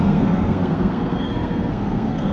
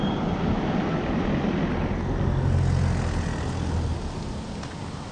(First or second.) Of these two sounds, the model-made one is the first